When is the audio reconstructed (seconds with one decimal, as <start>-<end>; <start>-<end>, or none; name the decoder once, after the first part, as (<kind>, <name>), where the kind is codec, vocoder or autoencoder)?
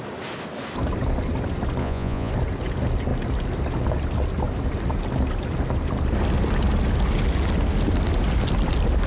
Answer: 1.8-2.3 (vocoder, Vocos)